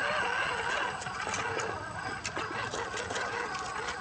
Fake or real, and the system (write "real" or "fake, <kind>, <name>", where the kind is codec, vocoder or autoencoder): real